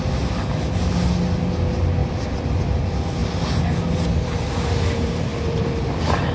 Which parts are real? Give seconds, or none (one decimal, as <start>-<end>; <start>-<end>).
0.0-2.0; 2.7-5.3